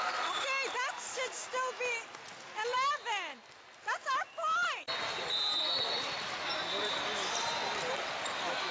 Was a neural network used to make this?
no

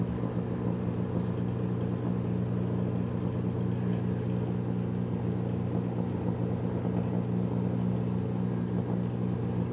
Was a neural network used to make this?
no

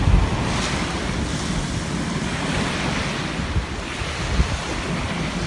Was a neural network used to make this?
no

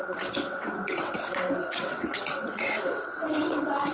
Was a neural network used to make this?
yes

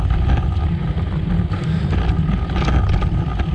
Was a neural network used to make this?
no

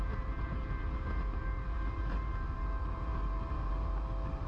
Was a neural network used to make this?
no